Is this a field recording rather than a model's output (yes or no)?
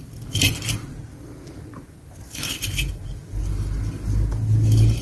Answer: yes